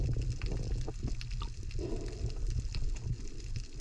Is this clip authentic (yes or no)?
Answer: yes